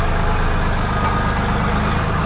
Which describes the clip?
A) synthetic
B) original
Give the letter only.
B